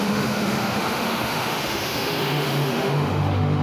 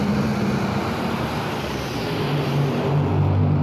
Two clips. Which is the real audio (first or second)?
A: second